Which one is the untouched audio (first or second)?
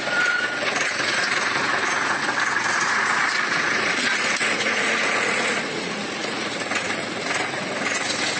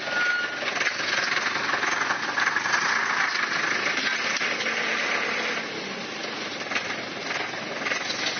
second